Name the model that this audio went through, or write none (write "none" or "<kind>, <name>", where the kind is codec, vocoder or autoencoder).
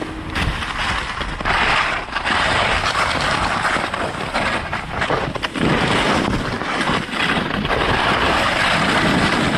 none